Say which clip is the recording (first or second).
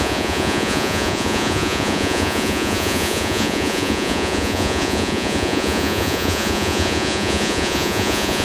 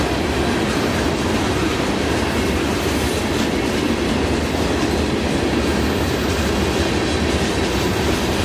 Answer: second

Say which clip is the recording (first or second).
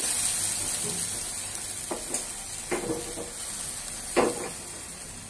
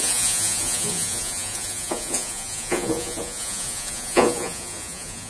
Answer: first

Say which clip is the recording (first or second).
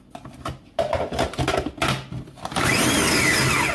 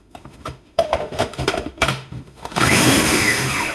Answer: first